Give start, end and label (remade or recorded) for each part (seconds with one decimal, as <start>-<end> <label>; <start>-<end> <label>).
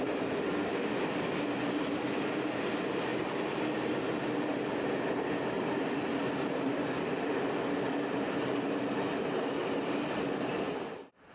0.0-11.3 recorded